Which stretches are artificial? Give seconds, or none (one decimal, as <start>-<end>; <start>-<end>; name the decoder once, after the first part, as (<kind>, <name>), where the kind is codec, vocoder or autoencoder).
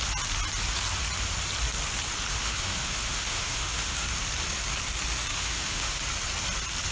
2.3-4.1 (autoencoder, DAC-VAE); 5.3-6.0